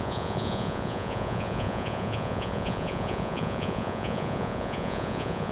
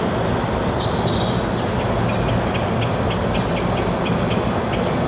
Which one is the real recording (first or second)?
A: second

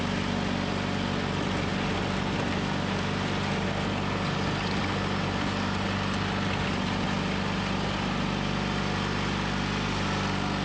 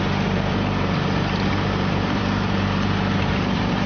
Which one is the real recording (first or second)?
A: first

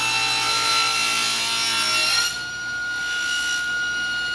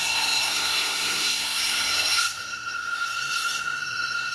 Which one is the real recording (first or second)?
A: first